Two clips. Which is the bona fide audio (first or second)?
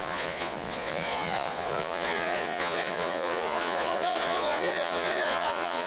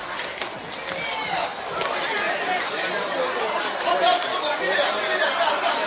second